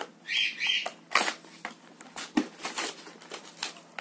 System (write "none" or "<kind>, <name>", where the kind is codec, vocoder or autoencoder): none